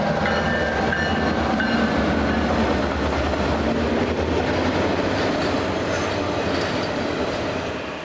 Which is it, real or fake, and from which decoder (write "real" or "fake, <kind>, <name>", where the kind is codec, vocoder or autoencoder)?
real